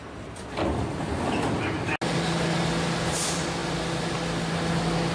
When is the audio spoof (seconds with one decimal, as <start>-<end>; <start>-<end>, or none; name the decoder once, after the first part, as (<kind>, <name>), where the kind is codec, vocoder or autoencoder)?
none